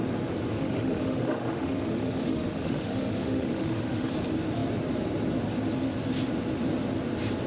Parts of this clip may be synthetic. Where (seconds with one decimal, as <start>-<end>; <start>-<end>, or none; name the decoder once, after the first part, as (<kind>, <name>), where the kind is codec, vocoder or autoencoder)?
0.5-4.1 (autoencoder, DAC-VAE)